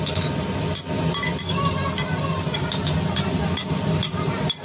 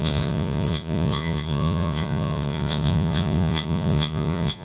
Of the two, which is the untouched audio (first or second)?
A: first